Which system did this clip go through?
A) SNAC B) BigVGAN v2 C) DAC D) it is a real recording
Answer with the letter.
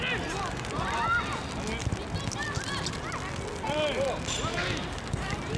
D